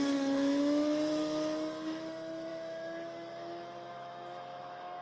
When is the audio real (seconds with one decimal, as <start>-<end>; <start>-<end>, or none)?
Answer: none